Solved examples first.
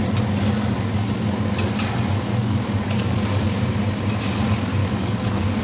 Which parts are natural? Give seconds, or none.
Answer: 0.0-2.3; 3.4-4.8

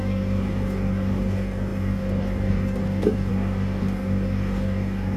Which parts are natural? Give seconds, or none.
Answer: none

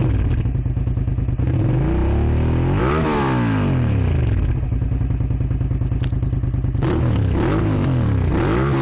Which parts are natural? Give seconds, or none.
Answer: 0.0-8.8

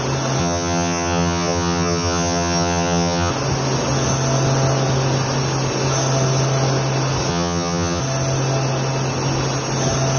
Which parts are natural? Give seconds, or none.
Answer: 0.0-0.4; 3.3-7.3; 8.0-10.2

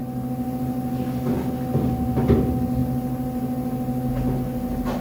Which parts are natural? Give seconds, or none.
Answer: 0.0-5.0